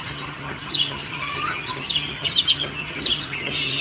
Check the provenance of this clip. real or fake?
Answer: fake